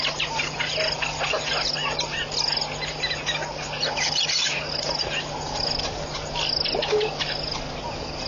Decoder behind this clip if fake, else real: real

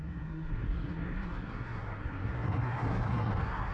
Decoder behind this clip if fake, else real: fake, codec, SNAC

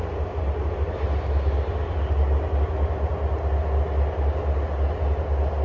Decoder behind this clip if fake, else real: real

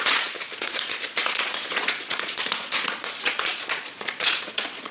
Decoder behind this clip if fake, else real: fake, vocoder, Vocos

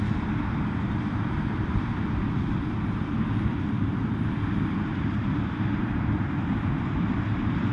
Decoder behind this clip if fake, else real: fake, vocoder, BigVGAN v2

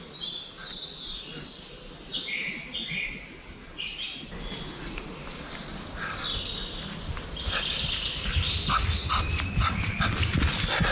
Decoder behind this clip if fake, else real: real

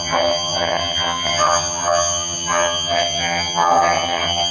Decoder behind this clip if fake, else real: fake, vocoder, HiFi-GAN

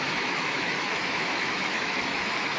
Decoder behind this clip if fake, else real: fake, autoencoder, DAC-VAE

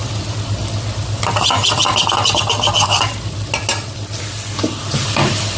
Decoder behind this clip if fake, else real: real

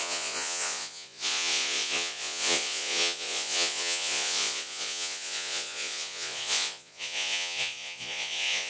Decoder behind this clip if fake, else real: fake, vocoder, Vocos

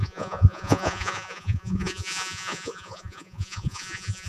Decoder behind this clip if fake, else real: fake, vocoder, Vocos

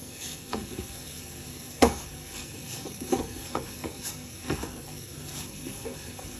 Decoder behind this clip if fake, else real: fake, codec, SNAC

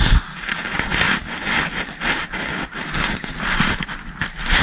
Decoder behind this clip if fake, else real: real